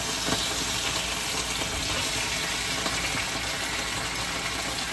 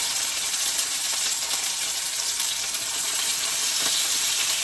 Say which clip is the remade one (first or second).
second